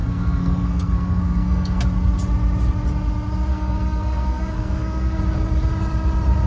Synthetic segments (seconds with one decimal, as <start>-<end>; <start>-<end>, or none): 0.0-1.8; 3.5-5.2